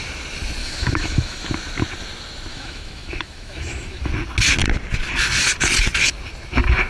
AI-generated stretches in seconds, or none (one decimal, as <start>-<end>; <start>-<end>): 0.6-1.5; 2.5-4.1